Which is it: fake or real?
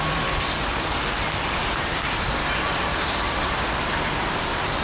real